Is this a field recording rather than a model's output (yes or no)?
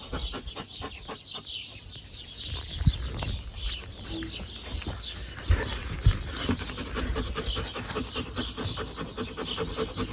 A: yes